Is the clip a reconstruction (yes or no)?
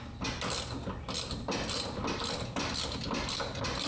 no